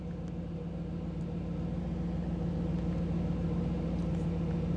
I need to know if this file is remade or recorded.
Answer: recorded